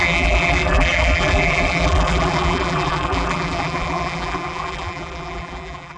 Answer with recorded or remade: remade